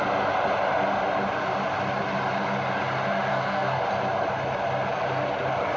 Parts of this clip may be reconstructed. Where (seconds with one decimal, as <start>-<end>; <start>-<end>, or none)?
3.3-3.8